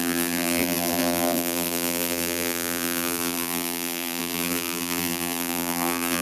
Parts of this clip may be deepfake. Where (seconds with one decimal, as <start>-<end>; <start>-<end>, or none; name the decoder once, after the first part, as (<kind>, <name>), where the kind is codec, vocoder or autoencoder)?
0.0-6.2 (vocoder, BigVGAN v2)